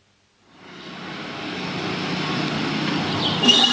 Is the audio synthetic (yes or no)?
no